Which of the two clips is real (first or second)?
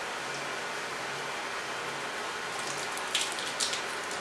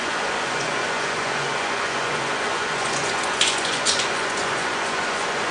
first